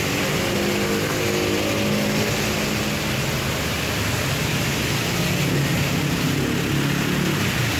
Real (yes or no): yes